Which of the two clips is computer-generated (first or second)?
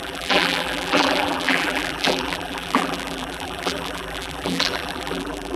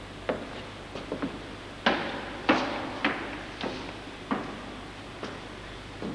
first